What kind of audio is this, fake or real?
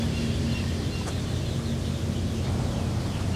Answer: real